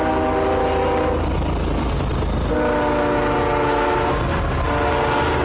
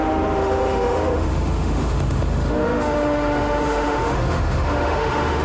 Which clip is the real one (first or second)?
first